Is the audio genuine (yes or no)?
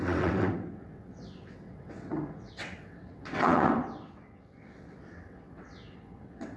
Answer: no